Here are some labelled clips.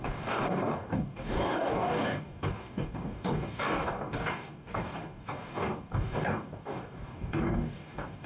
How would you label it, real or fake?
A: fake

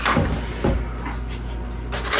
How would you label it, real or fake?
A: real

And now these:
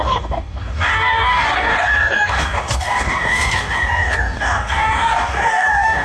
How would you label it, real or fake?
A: fake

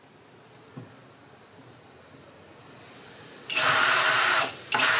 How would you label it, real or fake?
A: real